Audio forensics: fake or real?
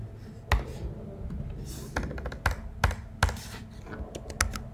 real